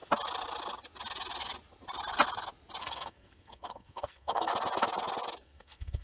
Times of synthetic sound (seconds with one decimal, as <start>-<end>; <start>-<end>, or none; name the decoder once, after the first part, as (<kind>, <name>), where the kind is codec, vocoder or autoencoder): 2.8-4.5 (codec, SNAC); 5.4-6.0